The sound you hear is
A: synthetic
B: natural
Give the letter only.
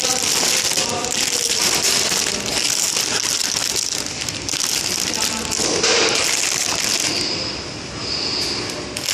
B